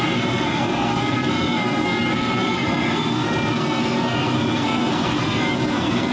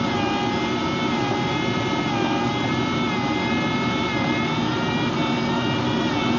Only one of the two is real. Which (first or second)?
second